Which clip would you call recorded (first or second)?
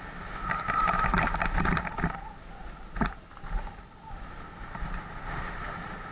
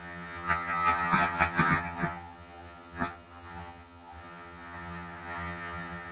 first